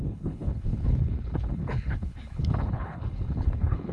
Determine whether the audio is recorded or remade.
remade